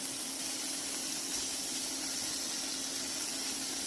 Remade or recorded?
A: recorded